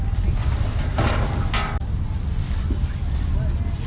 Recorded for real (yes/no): yes